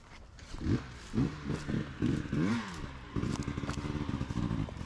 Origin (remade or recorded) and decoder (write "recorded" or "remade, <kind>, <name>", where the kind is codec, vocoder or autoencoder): recorded